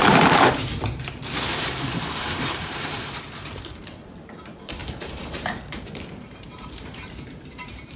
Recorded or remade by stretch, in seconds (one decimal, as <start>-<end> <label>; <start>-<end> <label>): 0.0-1.2 remade; 1.2-2.2 recorded; 2.2-8.0 remade